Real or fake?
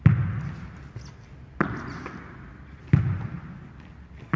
real